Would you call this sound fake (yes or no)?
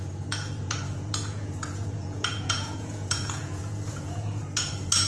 yes